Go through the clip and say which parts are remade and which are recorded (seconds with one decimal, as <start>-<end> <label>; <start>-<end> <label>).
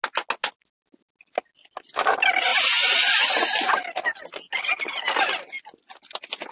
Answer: 0.0-6.5 recorded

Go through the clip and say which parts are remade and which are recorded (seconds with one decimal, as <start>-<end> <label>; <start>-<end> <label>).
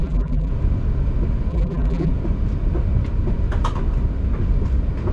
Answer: 0.0-0.5 remade; 0.5-1.5 recorded; 1.5-2.1 remade; 2.1-5.1 recorded